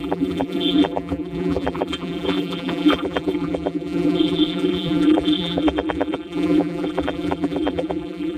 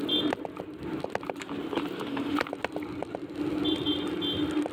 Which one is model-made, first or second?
first